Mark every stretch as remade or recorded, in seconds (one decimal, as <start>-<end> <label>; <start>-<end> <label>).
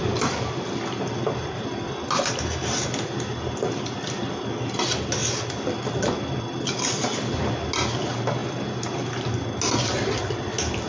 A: 0.0-10.9 recorded